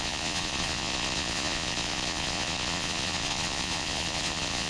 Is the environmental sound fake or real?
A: fake